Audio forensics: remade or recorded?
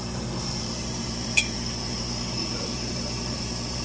remade